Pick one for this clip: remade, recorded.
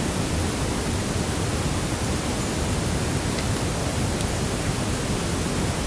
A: recorded